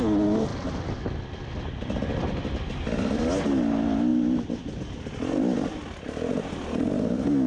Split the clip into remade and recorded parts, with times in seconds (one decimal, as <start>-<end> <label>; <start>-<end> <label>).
0.0-7.5 recorded